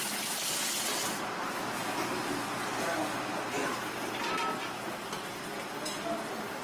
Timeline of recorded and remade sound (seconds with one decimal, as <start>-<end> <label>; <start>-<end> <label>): 0.0-6.6 recorded

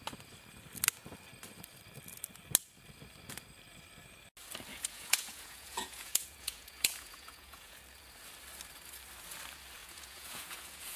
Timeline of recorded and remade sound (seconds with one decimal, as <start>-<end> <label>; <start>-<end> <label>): 0.0-4.7 recorded; 4.7-7.8 remade; 7.8-9.8 recorded; 9.8-11.0 remade

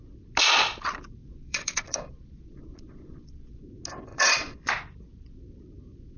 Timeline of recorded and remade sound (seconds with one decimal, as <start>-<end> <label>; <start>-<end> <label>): 0.0-1.2 recorded; 1.2-3.6 remade; 3.6-4.1 recorded; 4.1-4.7 remade; 4.7-6.2 recorded

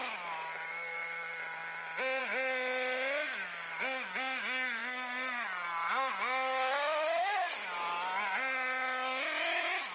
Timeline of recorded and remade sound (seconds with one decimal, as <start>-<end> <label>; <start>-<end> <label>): 0.0-9.9 recorded

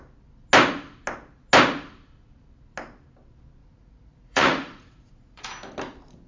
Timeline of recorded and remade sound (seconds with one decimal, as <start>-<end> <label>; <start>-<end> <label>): 0.0-3.6 recorded; 3.6-5.4 remade; 5.4-6.3 recorded

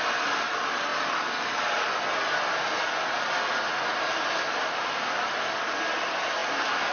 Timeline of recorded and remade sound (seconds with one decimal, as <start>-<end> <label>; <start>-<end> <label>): 0.0-6.9 recorded